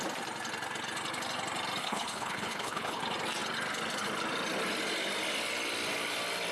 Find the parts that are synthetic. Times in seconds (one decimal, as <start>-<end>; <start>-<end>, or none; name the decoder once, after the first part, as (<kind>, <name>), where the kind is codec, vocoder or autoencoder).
1.8-3.0 (codec, HILCodec)